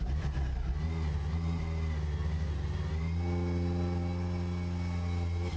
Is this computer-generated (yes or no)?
no